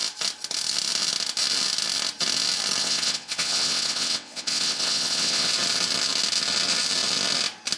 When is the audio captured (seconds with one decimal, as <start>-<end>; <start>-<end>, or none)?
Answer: 0.0-2.8; 5.5-7.8